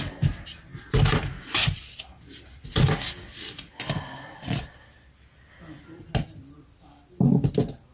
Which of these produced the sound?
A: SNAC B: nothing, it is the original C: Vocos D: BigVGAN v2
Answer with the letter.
B